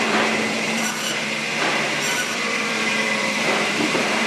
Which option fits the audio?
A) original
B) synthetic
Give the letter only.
B